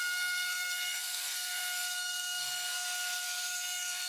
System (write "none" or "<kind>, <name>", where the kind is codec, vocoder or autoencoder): codec, SNAC